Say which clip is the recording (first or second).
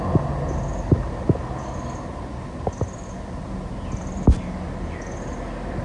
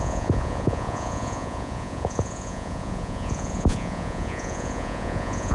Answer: first